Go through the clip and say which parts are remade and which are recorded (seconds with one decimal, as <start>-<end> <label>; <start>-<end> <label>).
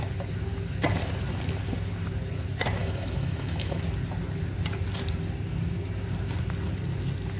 0.0-2.8 recorded; 2.8-3.8 remade; 3.8-7.4 recorded